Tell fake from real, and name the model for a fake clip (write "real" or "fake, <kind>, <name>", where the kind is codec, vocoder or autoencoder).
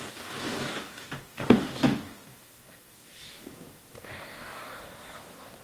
fake, codec, DAC